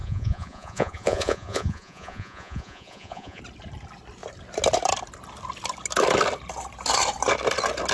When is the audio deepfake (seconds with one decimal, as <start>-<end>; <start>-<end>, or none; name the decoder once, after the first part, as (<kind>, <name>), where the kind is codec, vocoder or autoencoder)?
0.0-3.4 (vocoder, Vocos)